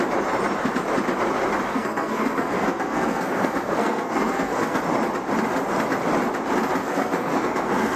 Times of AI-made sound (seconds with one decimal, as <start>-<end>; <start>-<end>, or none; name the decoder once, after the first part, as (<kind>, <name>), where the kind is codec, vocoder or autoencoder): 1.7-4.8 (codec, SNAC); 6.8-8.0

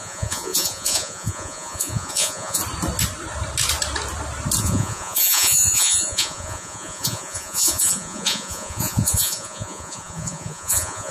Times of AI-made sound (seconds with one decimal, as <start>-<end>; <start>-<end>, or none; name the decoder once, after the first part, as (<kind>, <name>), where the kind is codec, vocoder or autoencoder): 0.0-2.6 (vocoder, Vocos); 4.6-11.1

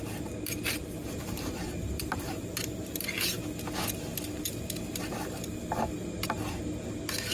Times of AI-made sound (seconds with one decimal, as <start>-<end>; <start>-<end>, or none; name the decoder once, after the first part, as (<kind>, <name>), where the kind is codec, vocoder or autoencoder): 1.0-3.4 (vocoder, BigVGAN v2)